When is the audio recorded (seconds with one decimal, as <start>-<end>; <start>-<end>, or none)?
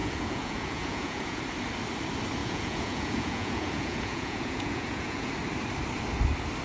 1.4-2.4; 5.3-6.6